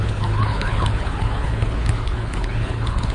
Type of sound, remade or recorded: remade